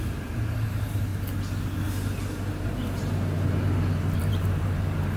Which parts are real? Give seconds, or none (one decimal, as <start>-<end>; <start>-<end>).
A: 1.1-4.2